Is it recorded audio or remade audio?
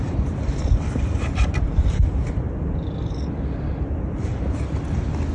recorded